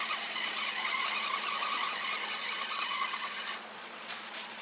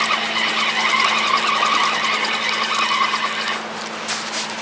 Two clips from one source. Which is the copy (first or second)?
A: first